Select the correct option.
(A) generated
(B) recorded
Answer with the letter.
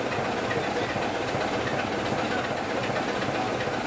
B